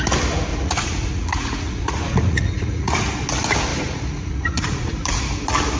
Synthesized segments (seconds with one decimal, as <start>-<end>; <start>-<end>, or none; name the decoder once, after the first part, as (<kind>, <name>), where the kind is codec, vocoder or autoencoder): 0.5-3.0 (vocoder, Vocos); 3.7-5.2